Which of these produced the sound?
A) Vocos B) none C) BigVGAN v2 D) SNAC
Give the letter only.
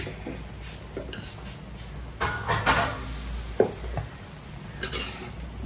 B